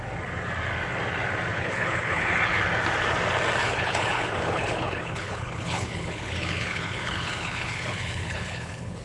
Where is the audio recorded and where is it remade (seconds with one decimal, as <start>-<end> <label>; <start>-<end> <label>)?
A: 0.0-1.5 recorded; 1.5-2.4 remade; 2.4-3.6 recorded; 3.6-9.0 remade

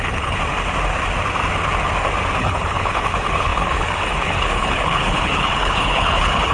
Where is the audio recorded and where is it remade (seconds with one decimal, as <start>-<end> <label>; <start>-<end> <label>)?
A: 0.0-0.4 remade; 0.4-2.4 recorded; 2.4-6.5 remade

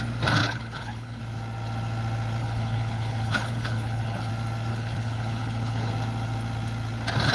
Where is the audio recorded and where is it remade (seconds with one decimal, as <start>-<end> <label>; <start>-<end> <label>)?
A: 0.0-0.4 recorded; 0.4-1.2 remade; 1.2-2.4 recorded; 2.4-4.3 remade; 4.3-4.7 recorded; 4.7-5.9 remade; 5.9-7.3 recorded

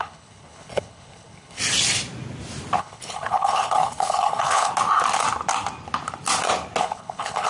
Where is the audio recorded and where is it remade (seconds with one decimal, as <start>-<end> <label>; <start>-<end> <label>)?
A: 0.0-1.6 remade; 1.6-2.8 recorded; 2.8-4.7 remade; 4.7-6.8 recorded; 6.8-7.5 remade

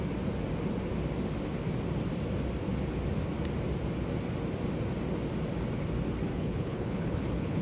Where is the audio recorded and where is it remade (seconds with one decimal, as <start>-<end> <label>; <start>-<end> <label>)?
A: 0.0-6.3 recorded; 6.3-7.6 remade

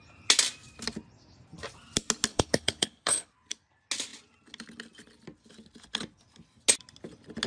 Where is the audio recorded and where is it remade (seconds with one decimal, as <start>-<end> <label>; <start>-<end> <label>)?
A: 0.0-2.3 recorded; 2.3-3.3 remade; 3.3-7.5 recorded

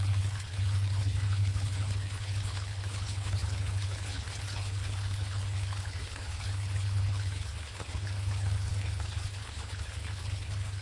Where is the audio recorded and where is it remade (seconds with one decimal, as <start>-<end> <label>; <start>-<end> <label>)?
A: 0.0-10.8 remade